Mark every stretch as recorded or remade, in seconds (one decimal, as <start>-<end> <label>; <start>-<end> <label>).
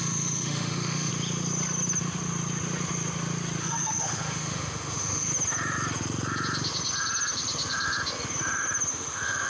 0.0-1.1 remade; 1.1-3.6 recorded; 3.6-5.3 remade; 5.3-8.9 recorded; 8.9-9.5 remade